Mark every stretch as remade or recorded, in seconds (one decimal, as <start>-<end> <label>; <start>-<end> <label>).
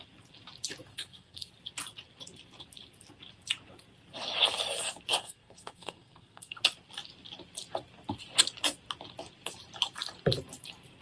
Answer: 0.0-0.9 recorded; 0.9-1.5 remade; 1.5-5.2 recorded; 5.2-6.6 remade; 6.6-11.0 recorded